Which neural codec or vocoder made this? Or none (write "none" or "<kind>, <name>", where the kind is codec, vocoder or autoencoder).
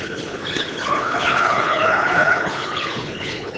codec, HILCodec